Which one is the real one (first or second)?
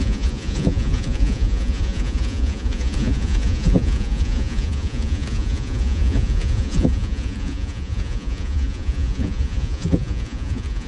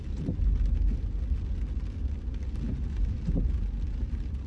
second